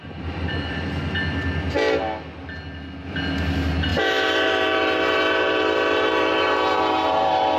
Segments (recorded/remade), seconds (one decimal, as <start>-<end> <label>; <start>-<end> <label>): 0.0-1.0 remade; 1.0-3.9 recorded; 3.9-7.6 remade